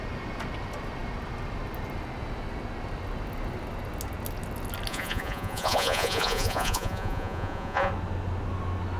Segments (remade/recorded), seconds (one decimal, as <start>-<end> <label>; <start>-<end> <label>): 0.0-4.9 recorded; 4.9-7.9 remade; 7.9-9.0 recorded